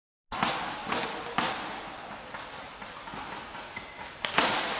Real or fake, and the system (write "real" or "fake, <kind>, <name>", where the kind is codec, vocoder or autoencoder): real